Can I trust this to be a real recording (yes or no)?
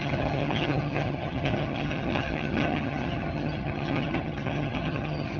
no